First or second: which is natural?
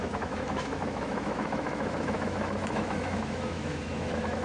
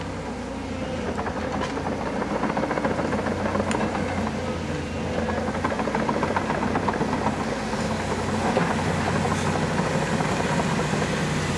second